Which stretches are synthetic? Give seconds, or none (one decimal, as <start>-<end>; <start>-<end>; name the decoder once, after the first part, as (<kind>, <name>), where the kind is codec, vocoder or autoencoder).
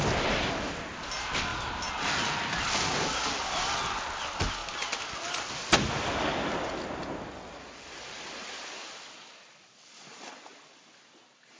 none